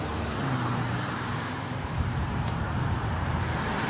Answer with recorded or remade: remade